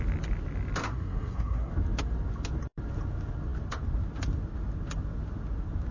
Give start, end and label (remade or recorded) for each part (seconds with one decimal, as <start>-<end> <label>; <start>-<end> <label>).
0.0-0.8 recorded; 0.8-1.7 remade; 1.7-5.9 recorded